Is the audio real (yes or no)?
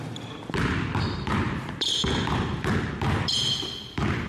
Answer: no